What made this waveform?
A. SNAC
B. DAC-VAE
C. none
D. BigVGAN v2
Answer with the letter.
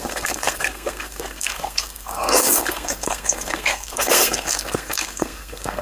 A